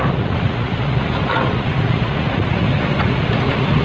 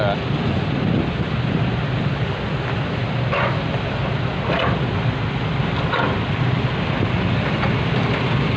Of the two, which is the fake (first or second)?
first